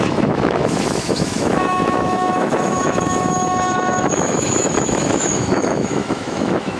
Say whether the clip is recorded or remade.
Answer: remade